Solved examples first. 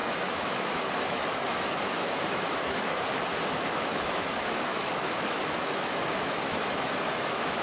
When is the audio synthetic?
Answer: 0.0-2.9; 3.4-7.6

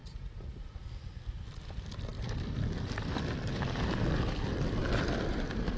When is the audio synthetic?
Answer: 0.0-0.6

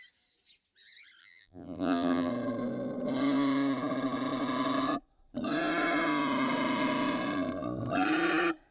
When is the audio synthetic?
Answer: 1.2-2.3

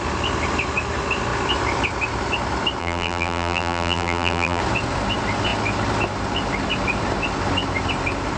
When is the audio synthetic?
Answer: 2.8-4.6